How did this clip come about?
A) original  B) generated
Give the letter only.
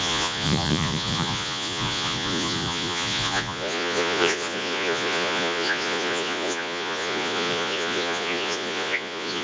B